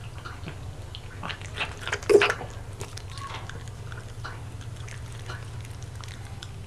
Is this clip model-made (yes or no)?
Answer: no